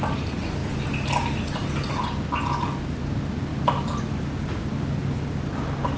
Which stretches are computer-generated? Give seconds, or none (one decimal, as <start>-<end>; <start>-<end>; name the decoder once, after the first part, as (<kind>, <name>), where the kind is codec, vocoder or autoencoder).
none